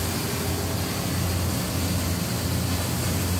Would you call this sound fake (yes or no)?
no